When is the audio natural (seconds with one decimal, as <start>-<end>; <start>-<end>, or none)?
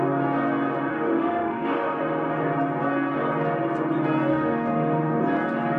0.0-0.9; 2.0-4.3; 5.2-5.8